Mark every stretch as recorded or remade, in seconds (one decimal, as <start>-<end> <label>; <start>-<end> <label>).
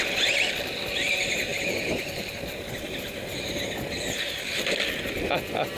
0.0-5.8 recorded